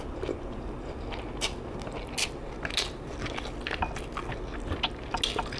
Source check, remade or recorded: recorded